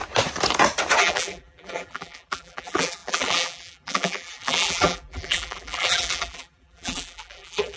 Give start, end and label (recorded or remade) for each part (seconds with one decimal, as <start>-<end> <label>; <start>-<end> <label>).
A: 0.0-1.0 recorded; 1.0-7.8 remade